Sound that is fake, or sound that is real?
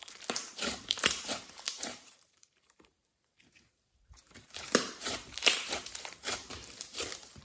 fake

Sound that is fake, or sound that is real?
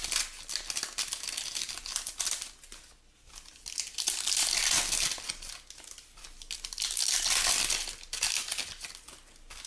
real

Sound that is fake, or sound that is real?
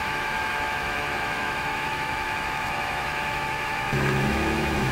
fake